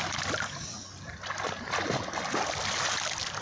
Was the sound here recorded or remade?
recorded